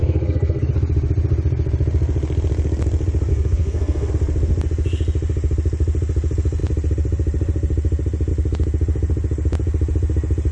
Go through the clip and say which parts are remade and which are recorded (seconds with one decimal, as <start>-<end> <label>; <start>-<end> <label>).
0.0-0.7 remade; 0.7-3.3 recorded; 3.3-4.1 remade; 4.1-10.5 recorded